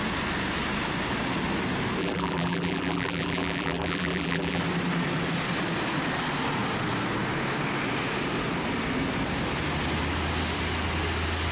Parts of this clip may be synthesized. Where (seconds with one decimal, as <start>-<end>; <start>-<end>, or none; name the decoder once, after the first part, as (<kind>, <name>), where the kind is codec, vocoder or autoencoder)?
2.0-4.6 (vocoder, BigVGAN v2)

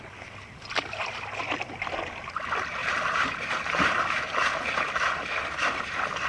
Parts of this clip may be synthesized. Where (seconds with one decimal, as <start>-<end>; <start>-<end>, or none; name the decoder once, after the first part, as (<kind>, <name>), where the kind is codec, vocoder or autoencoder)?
2.8-4.2 (vocoder, BigVGAN v2)